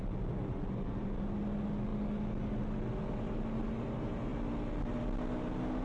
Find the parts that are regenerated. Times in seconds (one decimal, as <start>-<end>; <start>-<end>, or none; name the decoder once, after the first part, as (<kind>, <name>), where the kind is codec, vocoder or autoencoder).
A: none